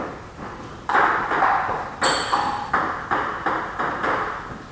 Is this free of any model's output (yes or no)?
yes